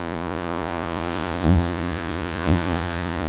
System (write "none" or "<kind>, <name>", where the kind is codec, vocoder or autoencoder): vocoder, Vocos